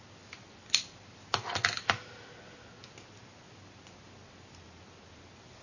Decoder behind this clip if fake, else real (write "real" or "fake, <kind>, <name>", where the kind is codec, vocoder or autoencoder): real